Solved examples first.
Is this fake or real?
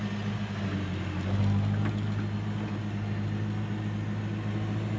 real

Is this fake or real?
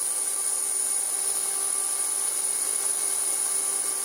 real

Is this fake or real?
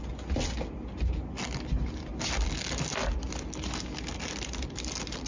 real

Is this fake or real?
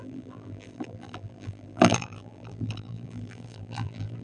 fake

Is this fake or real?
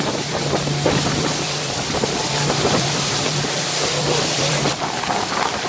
fake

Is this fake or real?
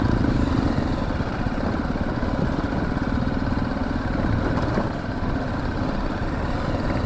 fake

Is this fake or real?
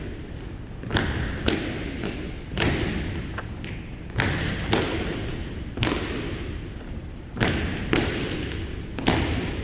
real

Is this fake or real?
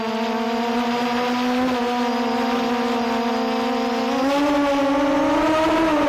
real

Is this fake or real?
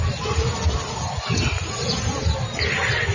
real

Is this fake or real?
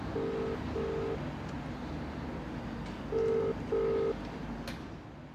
real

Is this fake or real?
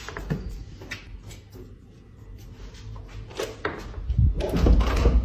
real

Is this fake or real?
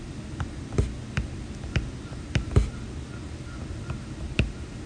real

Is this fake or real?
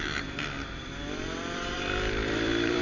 fake